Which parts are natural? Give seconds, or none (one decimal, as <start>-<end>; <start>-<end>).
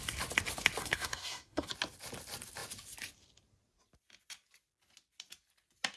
0.0-0.8; 1.7-6.0